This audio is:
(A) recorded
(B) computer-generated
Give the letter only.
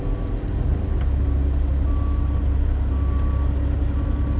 A